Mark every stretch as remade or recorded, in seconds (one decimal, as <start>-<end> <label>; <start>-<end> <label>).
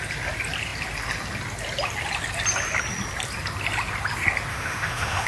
0.0-4.5 recorded; 4.5-5.3 remade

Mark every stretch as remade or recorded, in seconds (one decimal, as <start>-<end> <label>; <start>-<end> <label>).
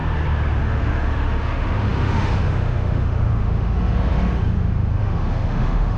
0.0-0.6 recorded; 0.6-6.0 remade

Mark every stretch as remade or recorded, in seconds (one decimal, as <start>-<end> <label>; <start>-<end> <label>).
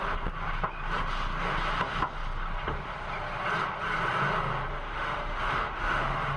0.0-4.7 recorded; 4.7-6.4 remade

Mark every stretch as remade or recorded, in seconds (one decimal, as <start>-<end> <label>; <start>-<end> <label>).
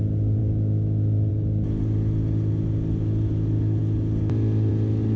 0.0-0.4 recorded; 0.4-1.3 remade; 1.3-5.2 recorded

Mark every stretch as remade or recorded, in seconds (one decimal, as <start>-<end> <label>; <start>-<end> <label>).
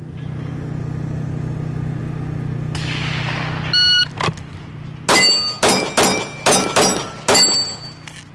0.0-8.3 recorded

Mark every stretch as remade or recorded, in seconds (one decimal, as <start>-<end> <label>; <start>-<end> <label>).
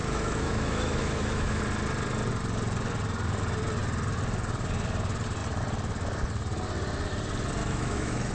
0.0-1.6 remade; 1.6-7.6 recorded; 7.6-8.3 remade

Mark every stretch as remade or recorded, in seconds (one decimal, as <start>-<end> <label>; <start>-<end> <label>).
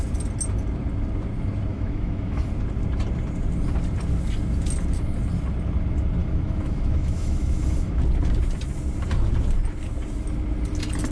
0.0-1.7 recorded; 1.7-2.5 remade; 2.5-6.2 recorded; 6.2-7.9 remade; 7.9-11.1 recorded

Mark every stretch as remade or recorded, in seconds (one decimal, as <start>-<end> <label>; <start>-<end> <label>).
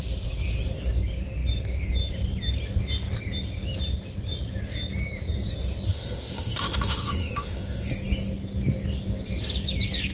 0.0-5.9 recorded; 5.9-7.9 remade; 7.9-10.1 recorded